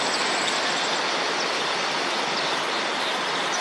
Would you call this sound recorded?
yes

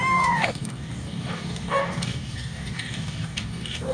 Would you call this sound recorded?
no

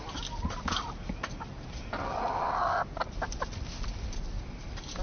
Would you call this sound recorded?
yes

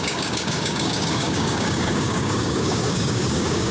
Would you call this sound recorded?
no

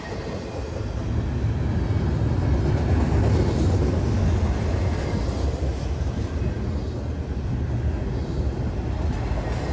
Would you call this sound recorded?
yes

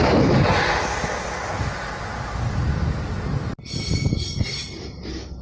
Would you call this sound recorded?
yes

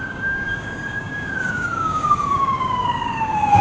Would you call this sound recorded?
no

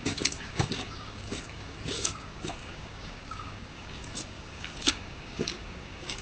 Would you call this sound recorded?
no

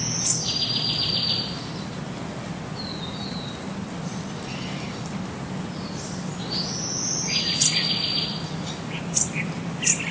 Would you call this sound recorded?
yes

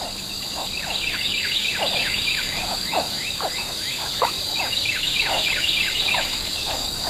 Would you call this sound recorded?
no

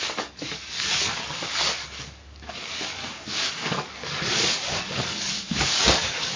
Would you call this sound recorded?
no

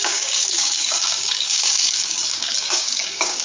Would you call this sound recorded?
no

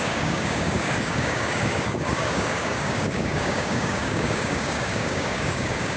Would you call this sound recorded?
no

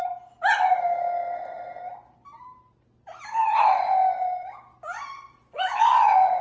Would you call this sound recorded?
yes